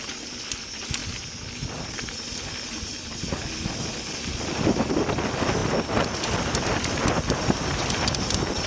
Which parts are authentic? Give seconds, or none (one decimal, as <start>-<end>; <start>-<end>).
0.0-8.7